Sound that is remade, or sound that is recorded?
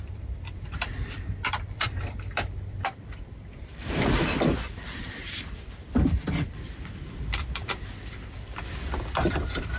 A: remade